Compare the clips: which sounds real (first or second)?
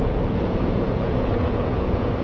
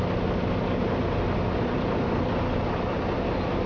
second